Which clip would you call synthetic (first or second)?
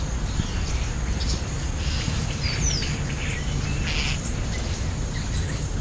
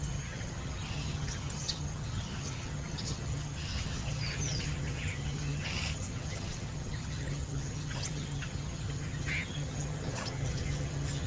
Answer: second